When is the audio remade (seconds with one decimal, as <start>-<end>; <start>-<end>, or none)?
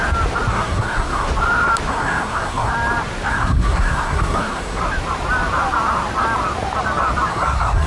0.5-1.3; 1.9-2.7; 3.3-4.8; 7.3-7.9